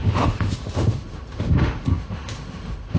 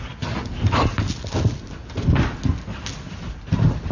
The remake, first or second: first